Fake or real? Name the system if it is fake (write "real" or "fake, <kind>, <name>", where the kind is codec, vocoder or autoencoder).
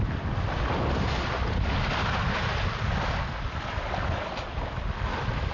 real